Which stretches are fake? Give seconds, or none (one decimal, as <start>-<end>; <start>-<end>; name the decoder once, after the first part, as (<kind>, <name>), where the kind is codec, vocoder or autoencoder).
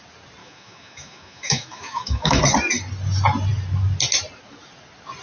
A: 0.4-2.4 (autoencoder, DAC-VAE)